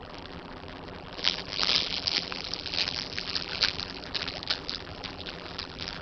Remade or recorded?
remade